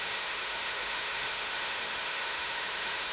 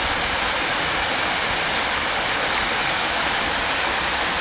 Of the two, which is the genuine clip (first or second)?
second